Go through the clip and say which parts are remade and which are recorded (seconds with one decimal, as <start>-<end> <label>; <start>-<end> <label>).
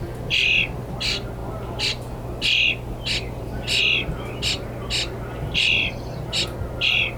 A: 0.0-7.2 recorded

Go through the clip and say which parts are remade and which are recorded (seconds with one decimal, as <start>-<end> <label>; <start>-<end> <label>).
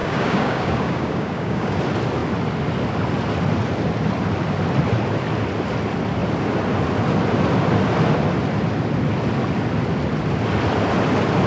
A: 0.0-1.8 remade; 1.8-11.5 recorded